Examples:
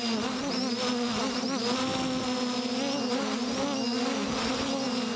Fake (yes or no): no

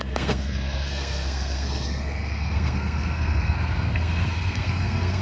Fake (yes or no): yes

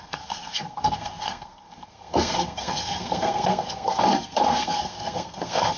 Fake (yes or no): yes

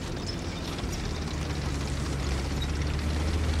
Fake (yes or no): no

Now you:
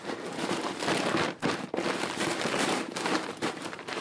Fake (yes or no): yes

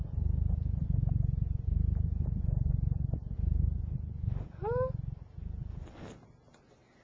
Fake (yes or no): no